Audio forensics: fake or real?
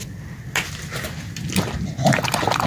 real